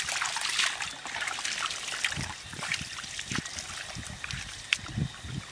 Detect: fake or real real